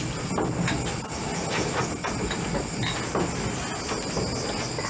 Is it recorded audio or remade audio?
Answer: recorded